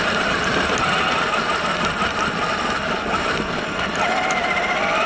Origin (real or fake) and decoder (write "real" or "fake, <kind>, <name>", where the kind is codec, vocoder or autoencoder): fake, vocoder, BigVGAN v2